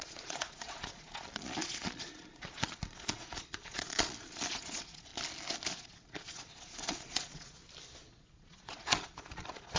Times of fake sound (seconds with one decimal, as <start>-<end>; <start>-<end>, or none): 0.0-5.1; 5.7-7.6; 8.1-9.8